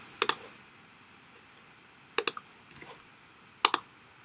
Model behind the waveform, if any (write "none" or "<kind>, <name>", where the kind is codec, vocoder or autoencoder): none